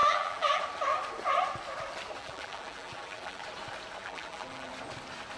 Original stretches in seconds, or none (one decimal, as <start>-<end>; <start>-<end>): 0.6-2.2; 3.4-4.0; 4.7-5.4